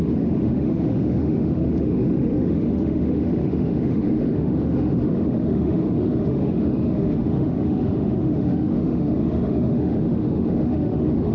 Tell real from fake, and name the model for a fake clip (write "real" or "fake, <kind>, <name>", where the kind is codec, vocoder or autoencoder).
fake, autoencoder, DAC-VAE